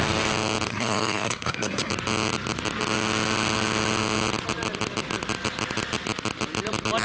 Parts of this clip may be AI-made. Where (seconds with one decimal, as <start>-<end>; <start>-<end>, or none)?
0.7-1.9